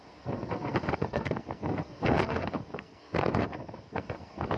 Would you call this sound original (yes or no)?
no